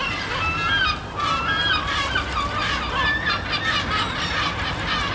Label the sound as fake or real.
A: real